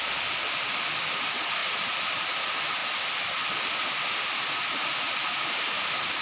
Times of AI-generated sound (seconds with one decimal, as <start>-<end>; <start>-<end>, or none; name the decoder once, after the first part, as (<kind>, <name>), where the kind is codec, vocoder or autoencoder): none